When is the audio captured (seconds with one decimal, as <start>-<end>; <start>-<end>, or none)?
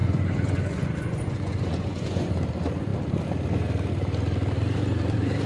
2.3-5.5